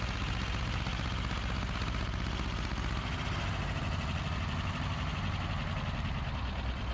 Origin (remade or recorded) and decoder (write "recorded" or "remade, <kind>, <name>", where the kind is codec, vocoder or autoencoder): recorded